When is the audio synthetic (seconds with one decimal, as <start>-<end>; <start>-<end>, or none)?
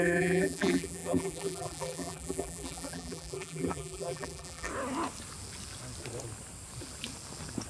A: 0.0-4.7